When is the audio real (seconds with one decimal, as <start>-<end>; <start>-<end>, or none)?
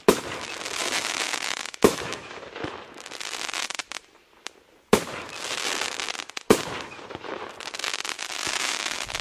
0.0-0.8; 2.3-9.2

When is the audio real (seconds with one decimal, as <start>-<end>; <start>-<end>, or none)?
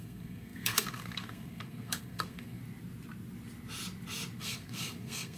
2.6-4.4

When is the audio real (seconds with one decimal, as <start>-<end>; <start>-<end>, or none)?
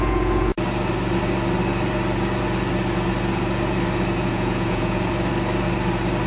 0.5-4.3; 5.1-6.3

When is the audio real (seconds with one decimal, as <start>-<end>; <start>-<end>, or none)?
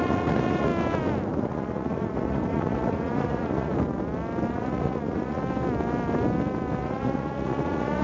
0.7-1.4; 3.7-4.5; 5.4-6.8